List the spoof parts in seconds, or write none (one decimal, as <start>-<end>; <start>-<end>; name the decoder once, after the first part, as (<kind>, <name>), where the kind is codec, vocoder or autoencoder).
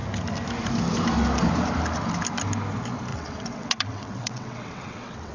3.1-5.3 (vocoder, WaveNeXt)